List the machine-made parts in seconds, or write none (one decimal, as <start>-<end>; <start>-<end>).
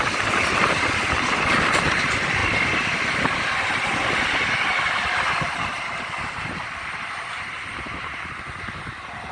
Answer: none